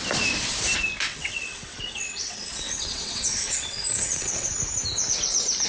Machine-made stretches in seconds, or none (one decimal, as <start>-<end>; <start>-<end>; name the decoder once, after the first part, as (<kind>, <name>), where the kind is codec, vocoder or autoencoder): 1.1-4.5 (vocoder, WaveNeXt)